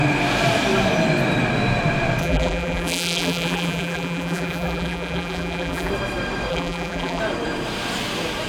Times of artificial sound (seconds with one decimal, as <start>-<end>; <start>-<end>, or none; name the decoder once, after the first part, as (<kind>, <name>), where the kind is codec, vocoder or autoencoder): 2.2-5.9 (vocoder, BigVGAN v2); 6.5-7.2